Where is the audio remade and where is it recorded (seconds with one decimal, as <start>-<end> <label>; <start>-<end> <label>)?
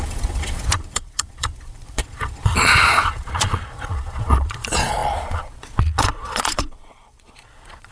0.0-7.9 remade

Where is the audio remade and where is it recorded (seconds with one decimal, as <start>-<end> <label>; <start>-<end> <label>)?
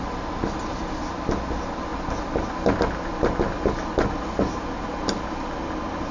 0.0-6.1 recorded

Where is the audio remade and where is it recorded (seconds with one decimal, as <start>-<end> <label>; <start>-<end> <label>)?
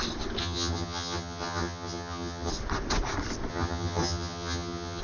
0.0-0.4 recorded; 0.4-2.5 remade; 2.5-3.5 recorded; 3.5-5.0 remade